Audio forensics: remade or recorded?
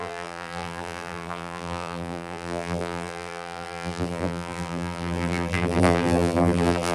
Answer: remade